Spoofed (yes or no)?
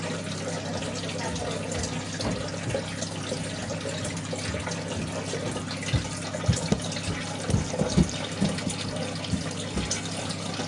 no